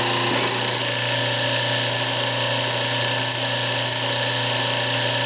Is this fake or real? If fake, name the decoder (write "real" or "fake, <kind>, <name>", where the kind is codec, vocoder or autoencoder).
real